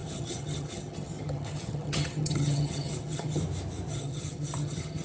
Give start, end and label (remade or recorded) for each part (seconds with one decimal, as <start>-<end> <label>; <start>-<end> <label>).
0.0-3.4 remade; 3.4-3.9 recorded; 3.9-5.0 remade